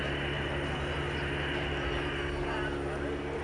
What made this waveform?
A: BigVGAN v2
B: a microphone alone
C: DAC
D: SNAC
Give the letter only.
B